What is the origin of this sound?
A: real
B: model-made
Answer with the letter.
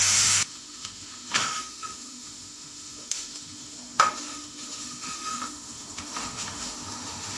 B